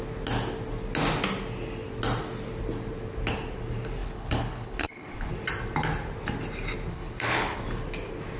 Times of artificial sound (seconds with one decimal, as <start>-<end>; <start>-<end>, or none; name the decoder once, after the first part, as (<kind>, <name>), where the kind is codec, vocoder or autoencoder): 4.0-5.3 (codec, HILCodec); 6.9-7.6